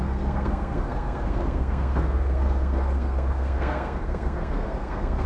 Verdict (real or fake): fake